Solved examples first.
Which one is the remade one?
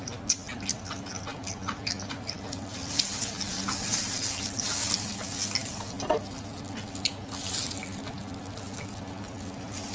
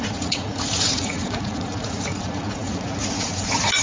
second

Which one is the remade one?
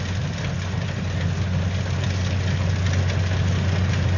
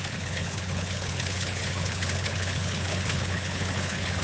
second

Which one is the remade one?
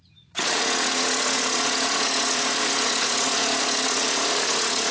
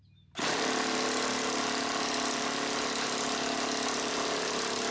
first